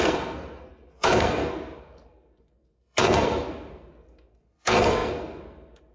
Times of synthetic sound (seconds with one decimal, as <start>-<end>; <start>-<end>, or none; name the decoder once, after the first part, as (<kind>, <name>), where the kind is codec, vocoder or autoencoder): 0.0-5.9 (codec, SNAC)